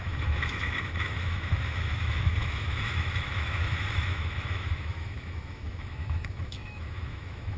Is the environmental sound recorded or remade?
remade